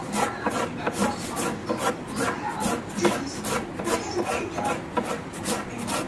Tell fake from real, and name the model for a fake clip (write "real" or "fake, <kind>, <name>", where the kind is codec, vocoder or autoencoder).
real